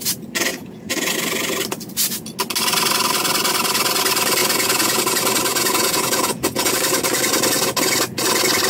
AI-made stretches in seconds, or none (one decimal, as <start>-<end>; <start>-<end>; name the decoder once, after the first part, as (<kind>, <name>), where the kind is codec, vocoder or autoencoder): 0.5-1.1 (vocoder, Vocos); 4.4-5.0; 5.5-6.7